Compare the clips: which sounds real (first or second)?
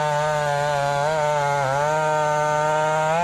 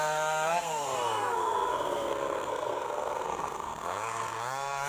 first